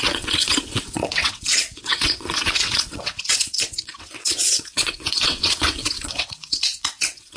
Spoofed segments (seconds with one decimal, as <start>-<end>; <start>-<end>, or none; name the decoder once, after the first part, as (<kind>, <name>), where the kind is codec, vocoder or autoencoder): 0.0-7.4 (vocoder, WaveNeXt)